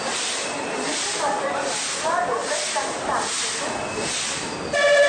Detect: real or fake real